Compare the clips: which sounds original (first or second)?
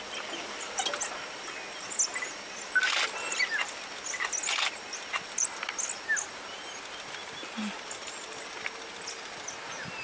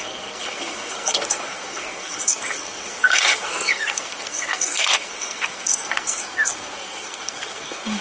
first